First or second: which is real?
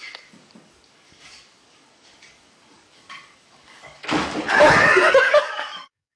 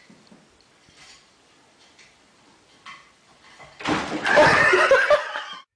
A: second